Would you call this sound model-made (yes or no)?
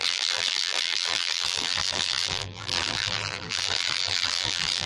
yes